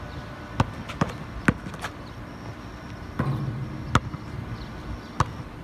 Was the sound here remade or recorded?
recorded